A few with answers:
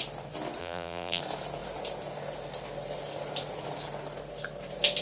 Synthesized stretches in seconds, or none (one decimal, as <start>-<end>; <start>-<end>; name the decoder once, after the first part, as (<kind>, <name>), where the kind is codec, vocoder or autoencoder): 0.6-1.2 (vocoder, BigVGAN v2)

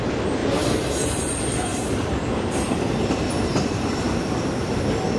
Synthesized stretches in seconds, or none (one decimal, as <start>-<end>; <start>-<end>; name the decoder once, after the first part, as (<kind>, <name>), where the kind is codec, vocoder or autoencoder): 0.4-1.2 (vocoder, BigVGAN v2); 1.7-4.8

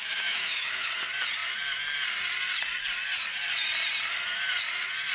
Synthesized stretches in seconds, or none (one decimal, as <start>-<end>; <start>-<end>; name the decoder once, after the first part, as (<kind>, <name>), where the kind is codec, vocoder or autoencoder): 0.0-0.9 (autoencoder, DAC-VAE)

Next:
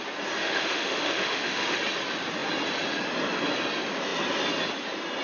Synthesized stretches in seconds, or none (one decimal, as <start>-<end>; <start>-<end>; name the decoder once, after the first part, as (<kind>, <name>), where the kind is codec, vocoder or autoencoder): 0.4-1.8 (autoencoder, DAC-VAE)